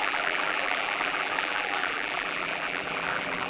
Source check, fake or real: fake